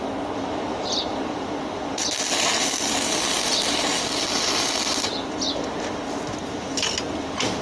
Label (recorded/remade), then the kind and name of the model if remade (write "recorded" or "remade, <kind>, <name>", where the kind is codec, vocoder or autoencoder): recorded